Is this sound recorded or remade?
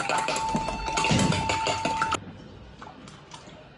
recorded